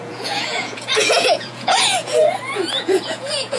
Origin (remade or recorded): remade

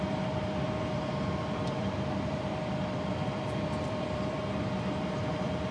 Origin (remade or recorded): remade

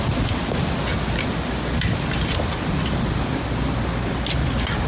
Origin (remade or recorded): recorded